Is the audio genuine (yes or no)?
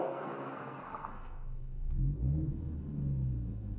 no